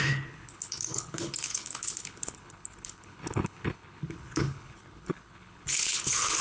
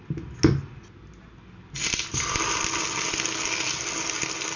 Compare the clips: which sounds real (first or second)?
second